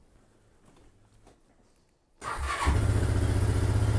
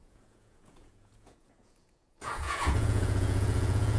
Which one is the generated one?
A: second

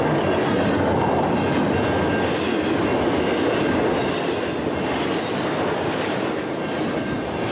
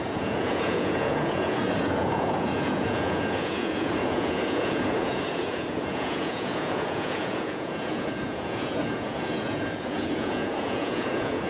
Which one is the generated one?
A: second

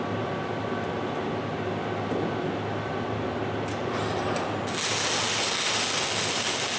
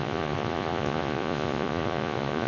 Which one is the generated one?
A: second